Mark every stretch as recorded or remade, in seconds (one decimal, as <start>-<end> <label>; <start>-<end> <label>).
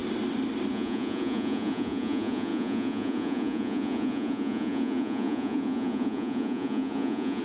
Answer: 0.0-0.7 recorded; 0.7-7.4 remade